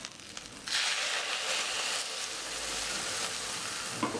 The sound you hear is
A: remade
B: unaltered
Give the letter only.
B